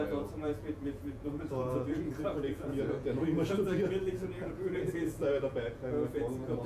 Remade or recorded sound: remade